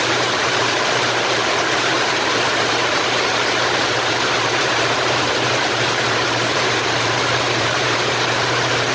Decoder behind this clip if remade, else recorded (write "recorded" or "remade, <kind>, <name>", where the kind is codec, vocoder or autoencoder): remade, vocoder, BigVGAN v2